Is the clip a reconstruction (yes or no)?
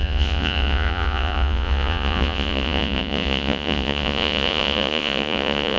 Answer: yes